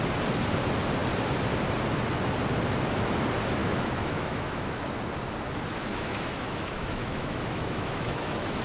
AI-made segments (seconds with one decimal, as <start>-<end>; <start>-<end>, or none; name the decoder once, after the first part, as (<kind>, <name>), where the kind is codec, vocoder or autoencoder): 3.6-4.8 (autoencoder, DAC-VAE); 5.9-8.6